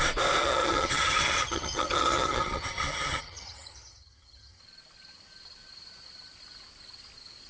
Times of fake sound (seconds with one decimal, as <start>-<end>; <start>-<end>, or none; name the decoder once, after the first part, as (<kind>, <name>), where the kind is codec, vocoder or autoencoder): 0.4-4.6 (vocoder, HiFi-GAN)